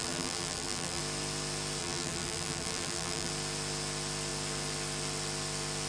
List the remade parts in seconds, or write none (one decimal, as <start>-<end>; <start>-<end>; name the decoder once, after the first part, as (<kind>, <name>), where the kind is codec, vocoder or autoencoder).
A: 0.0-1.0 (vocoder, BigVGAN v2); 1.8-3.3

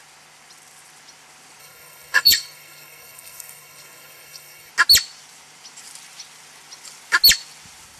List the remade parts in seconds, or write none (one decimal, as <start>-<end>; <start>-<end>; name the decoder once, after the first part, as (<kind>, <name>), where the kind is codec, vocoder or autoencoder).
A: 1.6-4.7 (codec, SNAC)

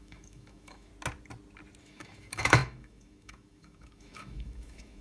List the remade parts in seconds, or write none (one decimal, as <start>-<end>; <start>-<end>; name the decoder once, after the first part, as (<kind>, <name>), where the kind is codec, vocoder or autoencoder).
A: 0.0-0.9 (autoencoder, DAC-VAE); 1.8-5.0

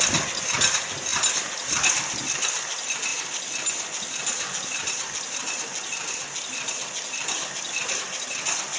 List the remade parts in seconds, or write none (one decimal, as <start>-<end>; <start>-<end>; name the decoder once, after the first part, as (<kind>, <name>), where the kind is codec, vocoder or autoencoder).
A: none

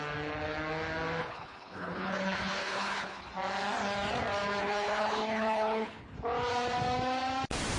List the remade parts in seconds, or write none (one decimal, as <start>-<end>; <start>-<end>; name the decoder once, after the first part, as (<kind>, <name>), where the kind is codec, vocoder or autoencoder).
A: 1.2-3.3 (codec, HILCodec); 4.6-6.2

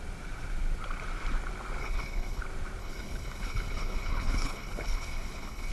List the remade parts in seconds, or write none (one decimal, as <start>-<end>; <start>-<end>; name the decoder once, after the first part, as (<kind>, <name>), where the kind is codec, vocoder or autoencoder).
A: 1.8-2.4 (codec, HILCodec); 2.8-5.7